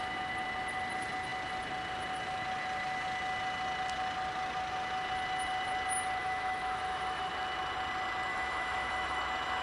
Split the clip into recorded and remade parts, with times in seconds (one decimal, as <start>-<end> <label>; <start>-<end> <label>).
0.0-6.2 recorded; 6.2-7.3 remade; 7.3-8.3 recorded; 8.3-9.2 remade; 9.2-9.6 recorded